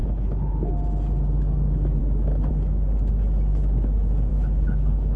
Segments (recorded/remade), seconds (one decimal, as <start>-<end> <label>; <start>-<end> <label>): 0.0-0.7 remade; 0.7-4.3 recorded; 4.3-5.2 remade